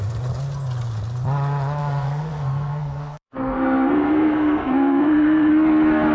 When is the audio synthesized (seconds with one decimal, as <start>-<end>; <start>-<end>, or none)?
1.8-5.5